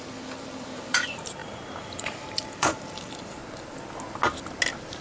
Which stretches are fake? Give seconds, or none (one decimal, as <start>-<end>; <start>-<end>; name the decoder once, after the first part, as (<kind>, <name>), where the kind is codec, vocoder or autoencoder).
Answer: 0.0-3.4 (vocoder, BigVGAN v2)